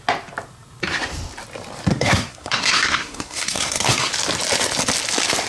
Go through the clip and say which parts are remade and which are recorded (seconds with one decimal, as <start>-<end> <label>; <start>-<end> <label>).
0.0-1.9 recorded; 1.9-4.1 remade; 4.1-5.5 recorded